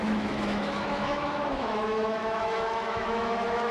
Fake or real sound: fake